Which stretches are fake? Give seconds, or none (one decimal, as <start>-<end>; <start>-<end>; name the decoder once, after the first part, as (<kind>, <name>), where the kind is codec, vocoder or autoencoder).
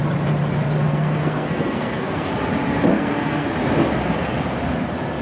0.9-2.3 (codec, SNAC); 2.9-3.5